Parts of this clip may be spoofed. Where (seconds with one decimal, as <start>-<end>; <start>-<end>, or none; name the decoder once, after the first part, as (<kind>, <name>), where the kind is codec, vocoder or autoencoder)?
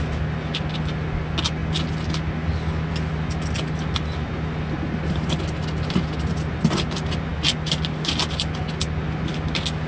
none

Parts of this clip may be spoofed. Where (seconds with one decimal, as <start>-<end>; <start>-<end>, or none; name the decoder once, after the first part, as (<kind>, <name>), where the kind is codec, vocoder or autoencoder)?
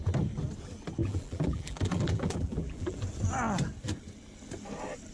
1.0-3.0 (vocoder, BigVGAN v2)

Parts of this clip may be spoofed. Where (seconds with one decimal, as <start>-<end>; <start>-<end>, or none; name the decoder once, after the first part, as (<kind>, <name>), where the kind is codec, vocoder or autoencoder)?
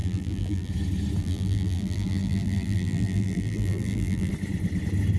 0.0-0.7 (vocoder, BigVGAN v2); 1.2-4.3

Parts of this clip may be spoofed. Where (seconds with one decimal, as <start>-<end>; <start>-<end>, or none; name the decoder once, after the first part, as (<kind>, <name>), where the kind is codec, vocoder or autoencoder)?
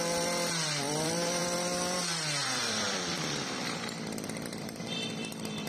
0.0-5.7 (vocoder, BigVGAN v2)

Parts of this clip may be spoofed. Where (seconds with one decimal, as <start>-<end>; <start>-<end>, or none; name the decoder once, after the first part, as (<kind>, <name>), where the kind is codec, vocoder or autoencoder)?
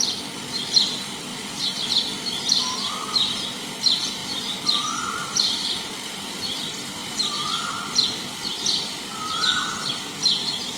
1.3-2.2 (vocoder, BigVGAN v2); 5.2-6.4; 7.0-8.1